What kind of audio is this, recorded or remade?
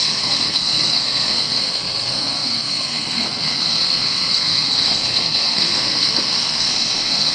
remade